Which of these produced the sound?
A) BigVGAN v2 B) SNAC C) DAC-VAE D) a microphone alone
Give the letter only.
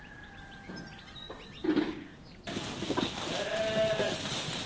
D